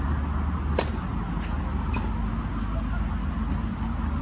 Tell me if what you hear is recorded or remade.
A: recorded